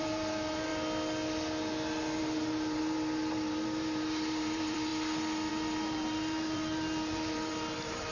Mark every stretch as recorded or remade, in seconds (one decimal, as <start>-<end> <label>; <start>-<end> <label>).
0.0-0.7 remade; 0.7-2.2 recorded; 2.2-4.9 remade; 4.9-5.5 recorded; 5.5-8.1 remade